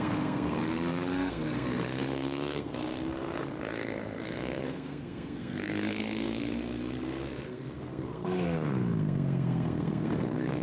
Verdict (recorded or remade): remade